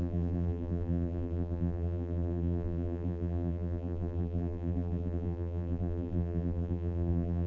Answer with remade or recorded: remade